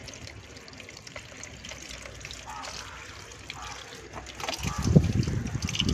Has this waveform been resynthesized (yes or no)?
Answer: no